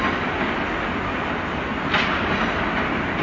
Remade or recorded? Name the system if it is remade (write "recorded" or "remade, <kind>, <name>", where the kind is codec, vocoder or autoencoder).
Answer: recorded